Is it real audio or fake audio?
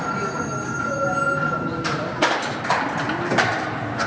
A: real